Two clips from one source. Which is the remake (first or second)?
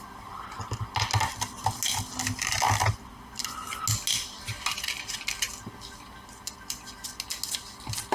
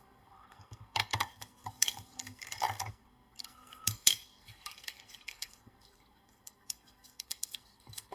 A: second